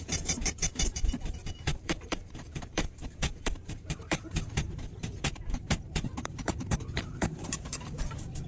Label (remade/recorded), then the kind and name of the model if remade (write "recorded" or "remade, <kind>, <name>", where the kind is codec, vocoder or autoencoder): remade, vocoder, BigVGAN v2